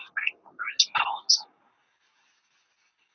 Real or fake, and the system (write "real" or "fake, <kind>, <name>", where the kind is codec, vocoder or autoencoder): real